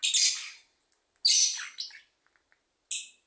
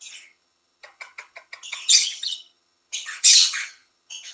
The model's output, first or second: second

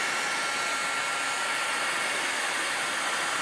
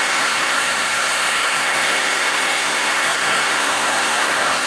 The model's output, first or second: second